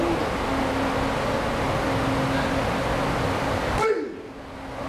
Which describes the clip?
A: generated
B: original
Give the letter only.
B